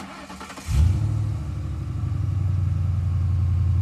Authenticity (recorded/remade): recorded